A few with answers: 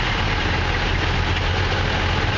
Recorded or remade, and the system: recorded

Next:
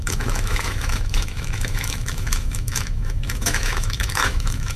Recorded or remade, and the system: remade, autoencoder, DAC-VAE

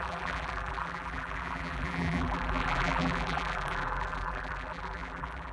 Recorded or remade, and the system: remade, vocoder, BigVGAN v2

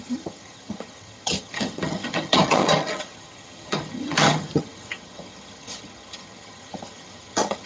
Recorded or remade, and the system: remade, vocoder, HiFi-GAN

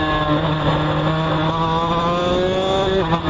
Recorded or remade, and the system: recorded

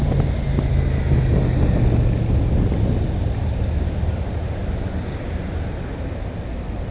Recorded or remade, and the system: recorded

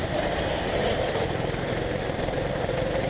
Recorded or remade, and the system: remade, vocoder, BigVGAN v2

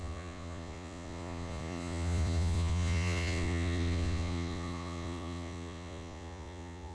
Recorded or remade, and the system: remade, vocoder, Vocos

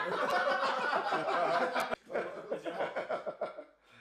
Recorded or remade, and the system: recorded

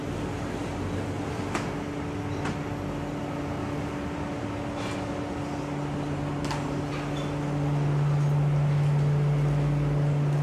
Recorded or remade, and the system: recorded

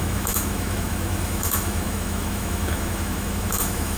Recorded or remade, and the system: remade, autoencoder, DAC-VAE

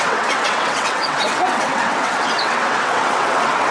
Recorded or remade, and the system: remade, vocoder, WaveNeXt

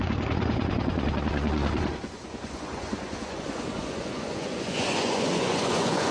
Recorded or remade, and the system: remade, vocoder, Vocos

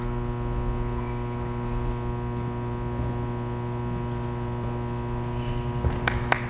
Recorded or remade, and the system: recorded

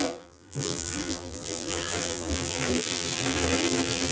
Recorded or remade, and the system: remade, vocoder, BigVGAN v2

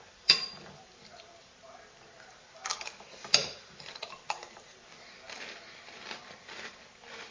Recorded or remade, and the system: remade, vocoder, BigVGAN v2